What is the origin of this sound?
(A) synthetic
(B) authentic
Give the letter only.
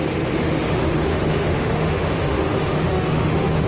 A